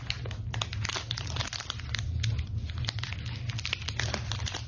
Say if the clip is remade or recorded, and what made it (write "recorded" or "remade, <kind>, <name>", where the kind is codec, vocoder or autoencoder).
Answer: recorded